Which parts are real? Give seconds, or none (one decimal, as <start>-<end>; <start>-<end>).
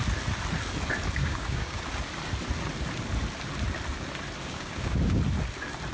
0.0-1.2; 1.8-4.4; 5.2-5.9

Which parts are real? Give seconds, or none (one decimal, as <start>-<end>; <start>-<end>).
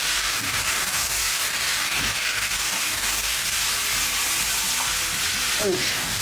3.6-5.6